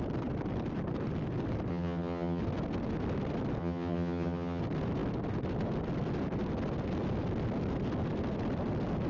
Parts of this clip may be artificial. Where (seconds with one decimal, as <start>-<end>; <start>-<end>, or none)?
1.7-2.4; 3.6-4.6